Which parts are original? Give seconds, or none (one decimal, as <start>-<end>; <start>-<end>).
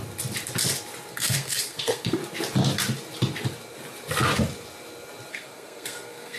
0.0-1.1; 2.2-5.3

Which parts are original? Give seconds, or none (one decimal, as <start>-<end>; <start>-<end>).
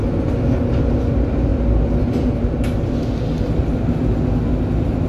0.0-5.1